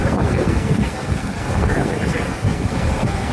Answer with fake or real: fake